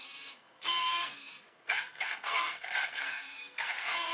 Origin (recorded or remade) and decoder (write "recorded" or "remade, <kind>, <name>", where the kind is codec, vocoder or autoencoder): remade, codec, SNAC